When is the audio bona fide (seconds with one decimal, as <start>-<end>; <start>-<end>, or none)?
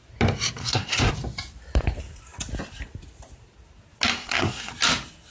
0.0-0.6; 1.1-4.1; 4.7-5.3